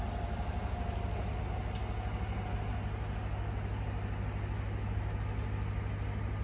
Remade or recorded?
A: recorded